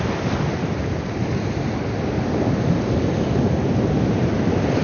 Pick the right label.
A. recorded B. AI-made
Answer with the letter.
A